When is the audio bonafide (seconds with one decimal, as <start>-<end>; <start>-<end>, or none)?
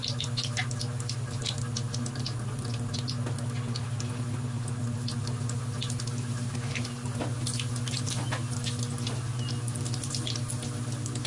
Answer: 0.0-11.3